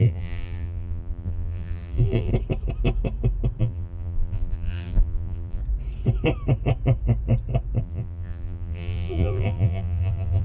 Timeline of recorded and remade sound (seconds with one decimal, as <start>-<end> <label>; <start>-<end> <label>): 0.0-2.3 remade; 2.3-3.6 recorded; 3.6-5.6 remade; 5.6-7.8 recorded; 7.8-10.4 remade